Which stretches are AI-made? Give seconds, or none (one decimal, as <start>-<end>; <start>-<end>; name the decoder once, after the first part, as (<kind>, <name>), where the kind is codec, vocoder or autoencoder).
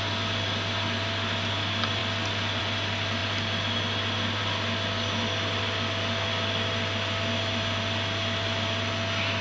none